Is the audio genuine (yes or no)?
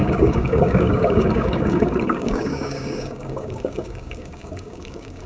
no